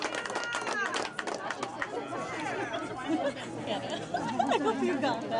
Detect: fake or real real